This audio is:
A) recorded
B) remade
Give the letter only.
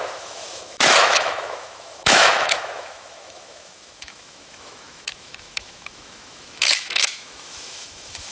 B